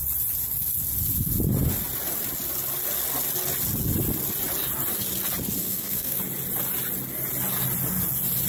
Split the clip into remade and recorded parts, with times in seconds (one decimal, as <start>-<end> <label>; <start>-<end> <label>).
0.0-5.6 recorded; 5.6-6.2 remade; 6.2-8.5 recorded